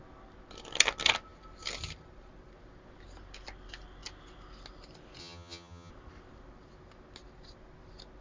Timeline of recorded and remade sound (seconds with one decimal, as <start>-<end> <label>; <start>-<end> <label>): 0.0-5.2 recorded; 5.2-5.9 remade; 5.9-8.2 recorded